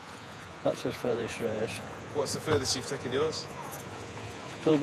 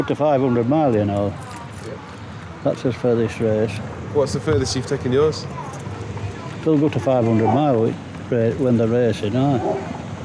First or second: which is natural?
second